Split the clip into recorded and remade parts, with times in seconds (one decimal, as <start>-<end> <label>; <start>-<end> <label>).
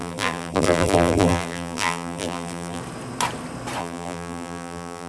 0.0-2.8 remade; 2.8-3.8 recorded; 3.8-5.1 remade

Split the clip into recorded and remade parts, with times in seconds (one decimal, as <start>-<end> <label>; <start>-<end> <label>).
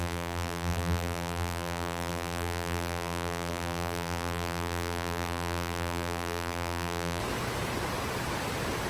0.0-7.2 remade; 7.2-8.9 recorded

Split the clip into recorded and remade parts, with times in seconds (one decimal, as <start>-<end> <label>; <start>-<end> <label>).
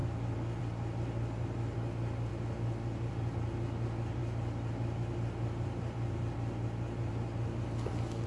0.0-2.3 recorded; 2.3-3.1 remade; 3.1-4.2 recorded; 4.2-7.1 remade; 7.1-8.3 recorded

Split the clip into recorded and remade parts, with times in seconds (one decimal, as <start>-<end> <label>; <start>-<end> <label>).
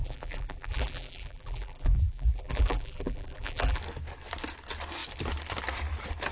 0.0-3.8 remade; 3.8-6.3 recorded